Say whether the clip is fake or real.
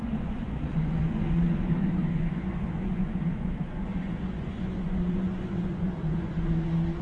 fake